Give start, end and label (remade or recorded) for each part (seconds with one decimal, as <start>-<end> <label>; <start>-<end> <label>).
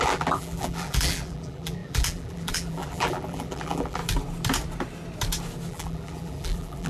0.0-4.0 remade; 4.0-5.7 recorded; 5.7-6.9 remade